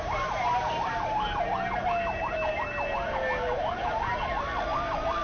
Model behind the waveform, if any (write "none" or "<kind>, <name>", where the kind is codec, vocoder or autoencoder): none